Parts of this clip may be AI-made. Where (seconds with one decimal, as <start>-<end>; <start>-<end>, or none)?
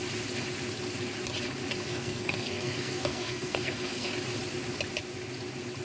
1.9-4.1